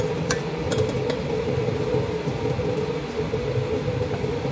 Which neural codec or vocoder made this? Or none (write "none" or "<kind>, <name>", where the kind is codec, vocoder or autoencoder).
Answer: none